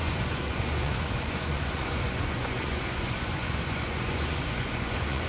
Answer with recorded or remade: remade